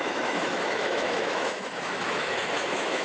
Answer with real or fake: fake